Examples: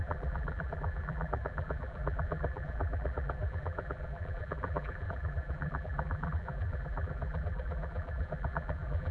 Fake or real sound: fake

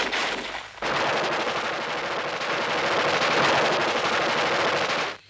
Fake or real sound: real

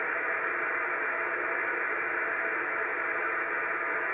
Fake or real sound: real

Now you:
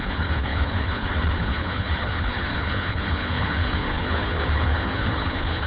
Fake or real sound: fake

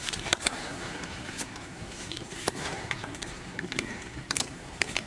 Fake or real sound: fake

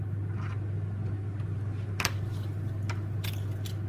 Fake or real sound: real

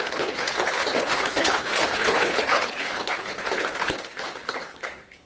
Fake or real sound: fake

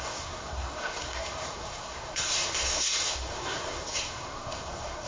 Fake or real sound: fake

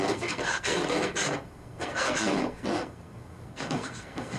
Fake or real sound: fake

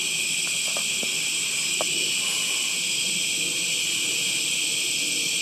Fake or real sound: real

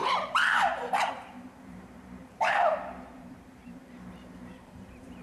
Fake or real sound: fake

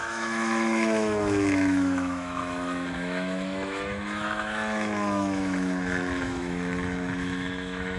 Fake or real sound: fake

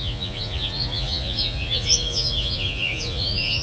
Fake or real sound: fake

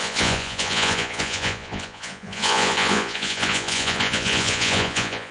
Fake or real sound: fake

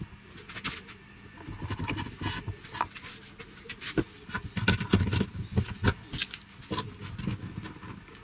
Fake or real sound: real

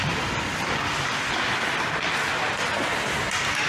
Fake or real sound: real